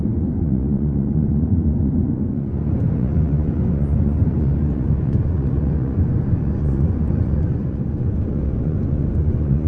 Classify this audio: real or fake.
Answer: fake